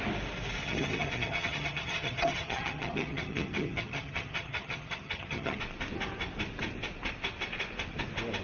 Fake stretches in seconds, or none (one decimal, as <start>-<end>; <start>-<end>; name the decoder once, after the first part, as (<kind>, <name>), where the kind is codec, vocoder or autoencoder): 0.6-5.6 (vocoder, HiFi-GAN)